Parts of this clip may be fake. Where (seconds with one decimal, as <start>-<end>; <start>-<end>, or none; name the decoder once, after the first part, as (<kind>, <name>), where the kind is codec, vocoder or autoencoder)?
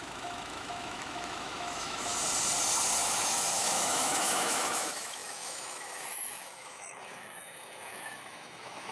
0.0-2.1 (autoencoder, DAC-VAE); 3.0-8.9